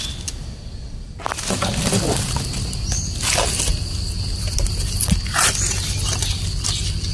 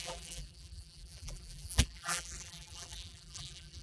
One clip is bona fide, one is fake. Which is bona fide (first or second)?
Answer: first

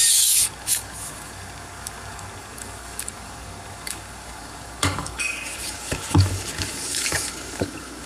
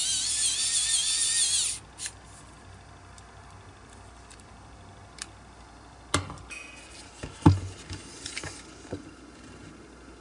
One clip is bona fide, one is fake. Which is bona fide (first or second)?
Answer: second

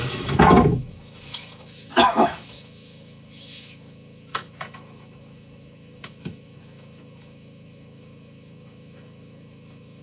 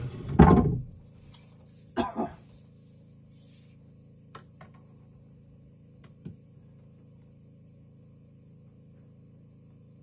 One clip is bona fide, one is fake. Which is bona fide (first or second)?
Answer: second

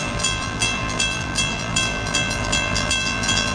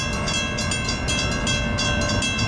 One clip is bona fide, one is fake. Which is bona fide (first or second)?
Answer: second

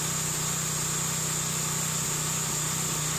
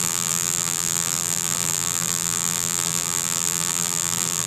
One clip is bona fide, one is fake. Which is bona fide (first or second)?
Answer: first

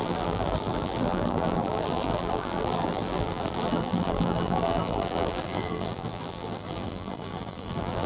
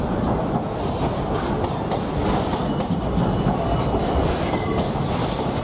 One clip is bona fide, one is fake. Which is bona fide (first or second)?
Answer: second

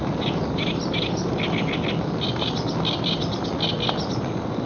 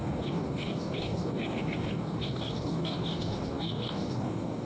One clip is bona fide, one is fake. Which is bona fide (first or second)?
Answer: first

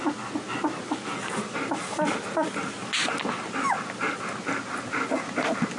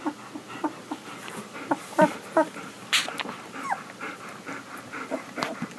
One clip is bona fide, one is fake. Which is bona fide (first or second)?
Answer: first